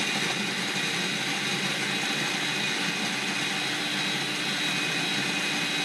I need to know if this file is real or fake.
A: real